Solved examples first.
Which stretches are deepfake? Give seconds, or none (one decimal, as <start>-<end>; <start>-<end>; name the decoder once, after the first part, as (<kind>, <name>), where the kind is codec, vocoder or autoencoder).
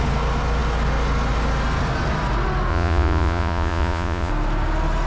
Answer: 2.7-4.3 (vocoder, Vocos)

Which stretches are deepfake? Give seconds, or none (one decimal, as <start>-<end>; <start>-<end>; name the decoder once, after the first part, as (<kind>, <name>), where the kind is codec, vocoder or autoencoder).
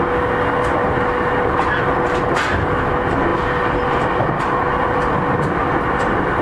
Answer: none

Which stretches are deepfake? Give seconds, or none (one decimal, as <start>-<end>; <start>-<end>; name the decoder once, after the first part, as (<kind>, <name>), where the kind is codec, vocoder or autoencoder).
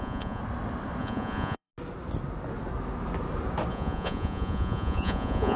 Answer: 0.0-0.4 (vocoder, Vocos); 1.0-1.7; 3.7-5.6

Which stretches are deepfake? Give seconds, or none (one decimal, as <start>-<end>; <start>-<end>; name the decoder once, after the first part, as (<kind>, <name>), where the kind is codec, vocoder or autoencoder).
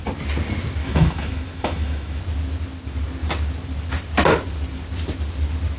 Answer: 0.8-2.2 (autoencoder, DAC-VAE)